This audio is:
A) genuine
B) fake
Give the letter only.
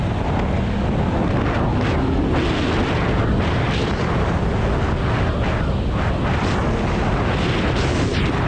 A